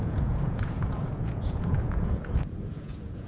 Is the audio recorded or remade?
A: remade